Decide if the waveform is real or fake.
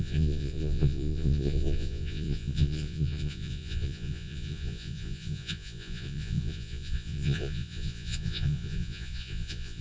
fake